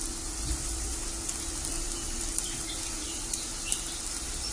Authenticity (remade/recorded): remade